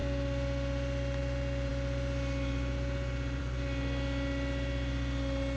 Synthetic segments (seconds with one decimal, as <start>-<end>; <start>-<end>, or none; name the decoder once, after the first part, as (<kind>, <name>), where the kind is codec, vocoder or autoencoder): none